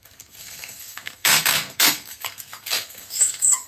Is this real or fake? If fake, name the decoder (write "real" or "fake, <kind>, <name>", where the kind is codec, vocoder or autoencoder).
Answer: fake, codec, SNAC